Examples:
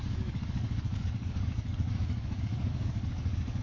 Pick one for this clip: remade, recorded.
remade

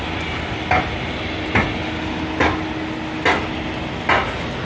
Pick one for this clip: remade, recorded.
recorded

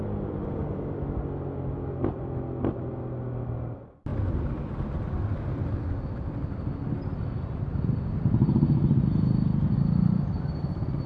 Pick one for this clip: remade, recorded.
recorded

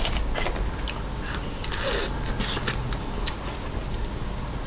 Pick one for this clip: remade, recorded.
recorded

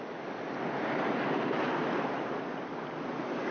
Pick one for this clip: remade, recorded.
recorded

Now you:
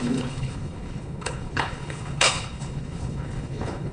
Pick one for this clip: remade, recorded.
remade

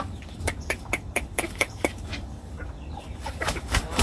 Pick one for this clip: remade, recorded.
remade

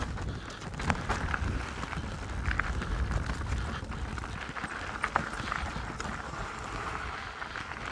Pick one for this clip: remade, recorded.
recorded